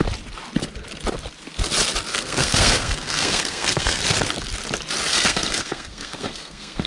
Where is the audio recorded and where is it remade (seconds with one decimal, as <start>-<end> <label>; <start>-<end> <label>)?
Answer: 0.0-2.1 recorded; 2.1-4.0 remade; 4.0-5.1 recorded; 5.1-6.9 remade